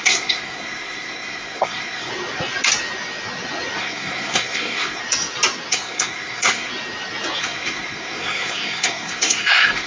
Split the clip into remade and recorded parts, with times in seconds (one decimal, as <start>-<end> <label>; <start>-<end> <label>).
0.0-2.1 remade; 2.1-3.8 recorded; 3.8-5.0 remade; 5.0-5.7 recorded; 5.7-6.7 remade; 6.7-7.4 recorded; 7.4-9.9 remade